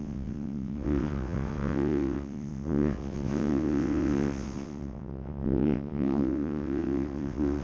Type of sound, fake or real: fake